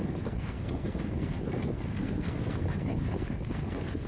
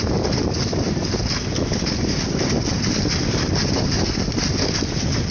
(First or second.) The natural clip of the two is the second